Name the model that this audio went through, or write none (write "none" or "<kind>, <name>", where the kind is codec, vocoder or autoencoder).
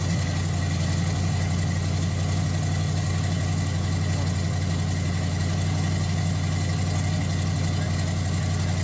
none